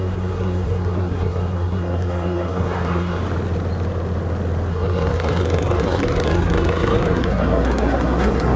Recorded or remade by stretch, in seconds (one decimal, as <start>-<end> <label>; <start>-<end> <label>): 0.0-3.2 remade; 3.2-4.7 recorded; 4.7-8.6 remade